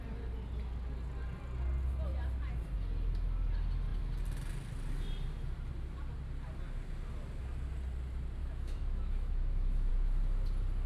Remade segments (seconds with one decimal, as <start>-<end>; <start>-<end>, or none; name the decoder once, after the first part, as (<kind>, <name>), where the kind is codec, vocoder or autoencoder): 8.4-9.9 (autoencoder, DAC-VAE)